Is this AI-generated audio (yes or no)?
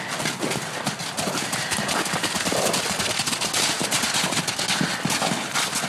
no